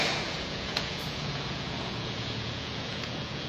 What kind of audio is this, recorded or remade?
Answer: remade